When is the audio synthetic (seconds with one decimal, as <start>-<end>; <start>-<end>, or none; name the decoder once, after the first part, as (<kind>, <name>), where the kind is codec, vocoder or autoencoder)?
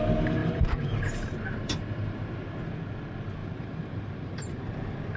0.4-2.3 (vocoder, BigVGAN v2); 3.4-4.6